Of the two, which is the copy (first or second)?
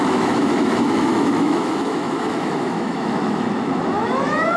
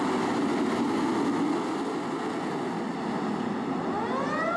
first